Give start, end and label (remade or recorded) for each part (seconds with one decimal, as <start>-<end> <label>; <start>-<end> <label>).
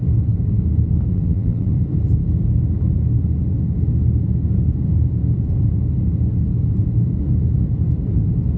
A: 0.0-1.1 recorded; 1.1-1.7 remade; 1.7-8.6 recorded